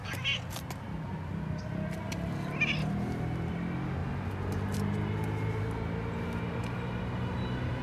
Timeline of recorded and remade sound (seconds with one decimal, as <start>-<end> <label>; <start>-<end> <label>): 0.0-7.8 recorded